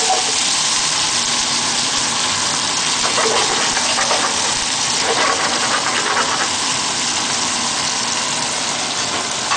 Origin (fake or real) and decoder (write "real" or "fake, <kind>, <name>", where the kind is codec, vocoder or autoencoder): real